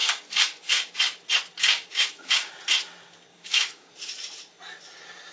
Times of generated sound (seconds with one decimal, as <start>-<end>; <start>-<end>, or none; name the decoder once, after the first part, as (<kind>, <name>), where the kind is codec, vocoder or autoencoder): 0.0-1.0 (codec, DAC); 1.6-2.5; 3.3-3.9